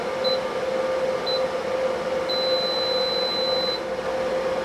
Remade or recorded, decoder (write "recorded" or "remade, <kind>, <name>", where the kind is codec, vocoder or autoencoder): recorded